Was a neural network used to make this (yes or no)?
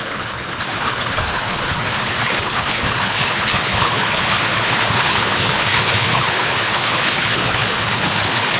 yes